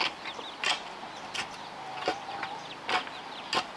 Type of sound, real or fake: real